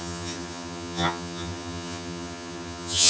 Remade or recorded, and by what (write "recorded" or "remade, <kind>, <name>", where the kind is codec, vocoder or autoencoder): remade, vocoder, HiFi-GAN